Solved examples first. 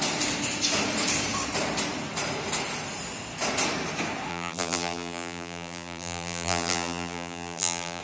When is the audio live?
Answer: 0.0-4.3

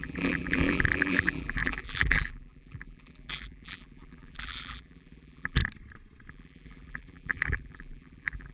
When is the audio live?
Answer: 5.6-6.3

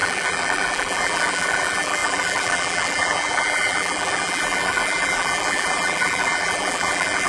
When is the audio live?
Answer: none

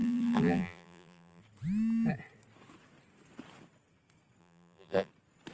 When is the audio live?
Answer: 1.4-4.4; 5.1-5.5

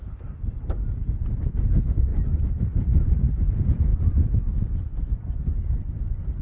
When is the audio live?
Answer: 0.0-2.1; 3.2-6.4

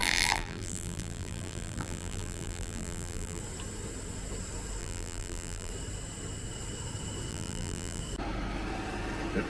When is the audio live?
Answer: 3.4-4.8; 5.7-7.3; 8.0-9.5